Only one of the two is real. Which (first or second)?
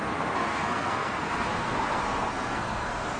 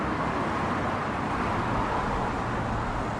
second